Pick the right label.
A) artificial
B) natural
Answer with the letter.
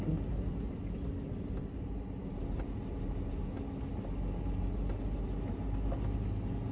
B